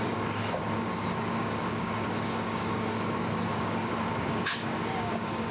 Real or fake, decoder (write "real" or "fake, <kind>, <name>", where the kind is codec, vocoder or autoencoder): fake, codec, DAC